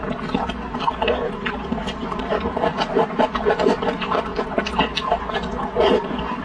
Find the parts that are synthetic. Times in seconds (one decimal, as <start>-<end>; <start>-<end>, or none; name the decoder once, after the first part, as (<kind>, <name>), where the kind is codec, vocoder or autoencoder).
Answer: none